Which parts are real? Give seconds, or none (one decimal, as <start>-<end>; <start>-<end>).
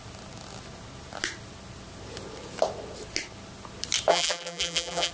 0.0-4.1